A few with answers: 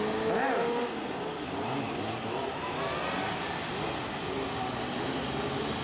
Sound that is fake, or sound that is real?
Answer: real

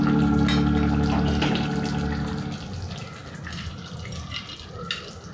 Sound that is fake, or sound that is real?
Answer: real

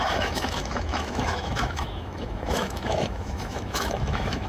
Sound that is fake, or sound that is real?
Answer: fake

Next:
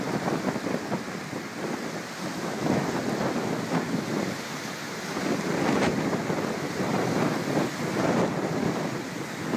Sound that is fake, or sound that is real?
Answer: real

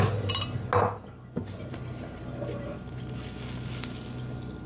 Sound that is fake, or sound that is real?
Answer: real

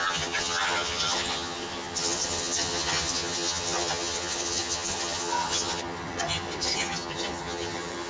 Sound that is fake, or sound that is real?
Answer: fake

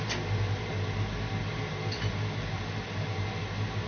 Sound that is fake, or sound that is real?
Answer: real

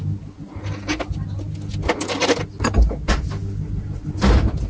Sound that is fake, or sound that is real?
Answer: real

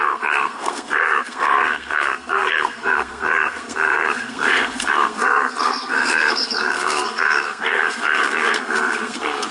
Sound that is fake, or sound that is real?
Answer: fake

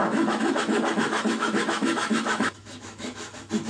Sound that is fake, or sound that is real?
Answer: fake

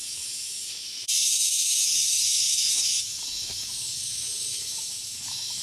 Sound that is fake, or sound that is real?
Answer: fake